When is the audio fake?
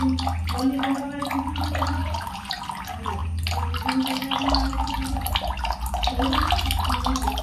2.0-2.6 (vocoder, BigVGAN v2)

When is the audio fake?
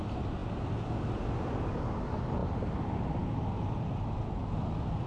none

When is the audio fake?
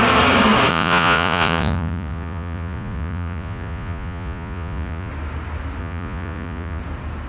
0.7-5.1 (vocoder, Vocos); 5.8-6.8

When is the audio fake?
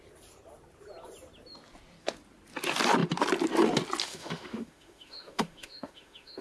4.0-6.4 (autoencoder, DAC-VAE)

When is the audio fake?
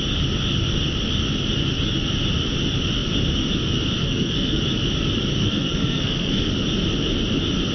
4.0-4.6 (codec, SNAC); 5.4-6.5